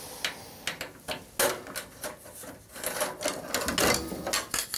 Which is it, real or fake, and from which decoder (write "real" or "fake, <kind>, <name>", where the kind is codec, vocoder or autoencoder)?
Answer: real